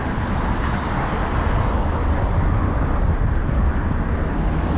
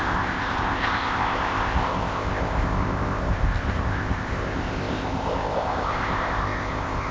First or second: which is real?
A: first